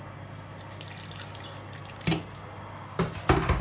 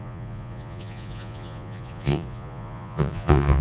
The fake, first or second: second